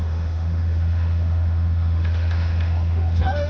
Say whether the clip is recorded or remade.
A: remade